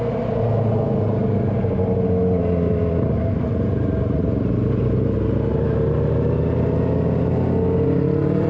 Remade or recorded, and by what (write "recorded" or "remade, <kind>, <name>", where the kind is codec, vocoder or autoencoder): recorded